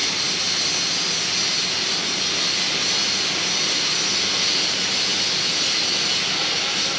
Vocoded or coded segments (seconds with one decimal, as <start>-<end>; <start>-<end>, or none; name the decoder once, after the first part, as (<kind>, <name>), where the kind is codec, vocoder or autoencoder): none